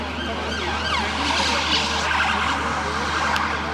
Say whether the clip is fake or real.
real